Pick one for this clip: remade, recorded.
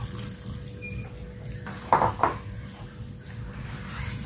recorded